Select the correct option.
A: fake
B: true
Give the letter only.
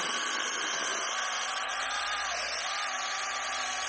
B